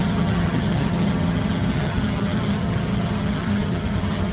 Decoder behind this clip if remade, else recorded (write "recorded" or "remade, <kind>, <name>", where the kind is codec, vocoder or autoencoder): remade, vocoder, HiFi-GAN